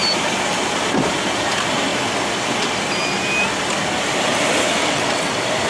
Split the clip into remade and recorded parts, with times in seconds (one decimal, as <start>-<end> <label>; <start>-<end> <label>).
0.0-4.8 recorded; 4.8-5.3 remade; 5.3-5.7 recorded